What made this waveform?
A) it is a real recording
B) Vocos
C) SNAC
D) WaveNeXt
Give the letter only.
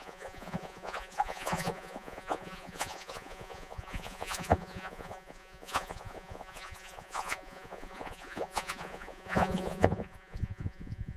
B